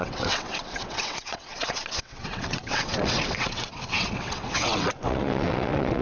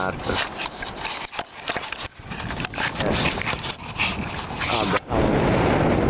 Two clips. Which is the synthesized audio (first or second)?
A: first